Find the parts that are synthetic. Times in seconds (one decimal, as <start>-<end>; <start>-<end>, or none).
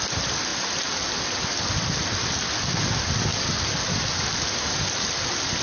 0.5-1.8; 3.3-4.5